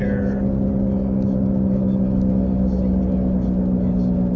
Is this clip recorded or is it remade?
recorded